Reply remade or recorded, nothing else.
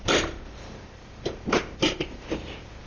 recorded